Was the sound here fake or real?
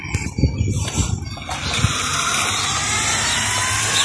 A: real